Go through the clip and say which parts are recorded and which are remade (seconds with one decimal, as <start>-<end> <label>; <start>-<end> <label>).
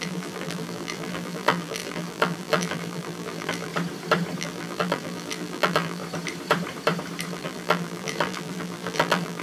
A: 0.0-3.7 remade; 3.7-4.4 recorded; 4.4-6.0 remade; 6.0-7.3 recorded; 7.3-9.4 remade